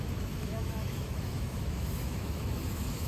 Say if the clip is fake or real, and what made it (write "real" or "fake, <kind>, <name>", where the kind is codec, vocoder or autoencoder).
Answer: fake, autoencoder, DAC-VAE